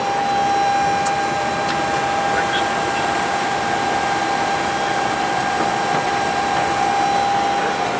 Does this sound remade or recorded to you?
recorded